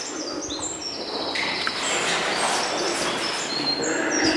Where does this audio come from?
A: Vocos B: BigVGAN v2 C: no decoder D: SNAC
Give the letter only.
C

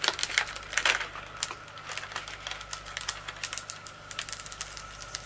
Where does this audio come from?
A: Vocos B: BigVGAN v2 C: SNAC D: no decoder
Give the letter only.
D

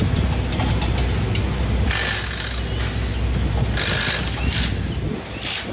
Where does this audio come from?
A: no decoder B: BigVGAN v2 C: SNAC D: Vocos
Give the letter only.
A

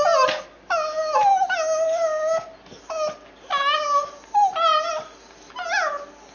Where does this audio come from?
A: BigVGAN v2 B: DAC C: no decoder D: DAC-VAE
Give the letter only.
C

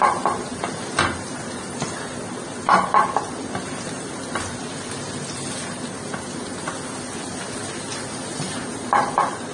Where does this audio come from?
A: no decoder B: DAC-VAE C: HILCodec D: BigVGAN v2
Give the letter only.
A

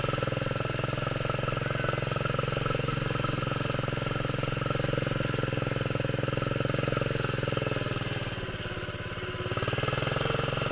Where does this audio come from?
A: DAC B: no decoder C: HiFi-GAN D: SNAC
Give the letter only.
B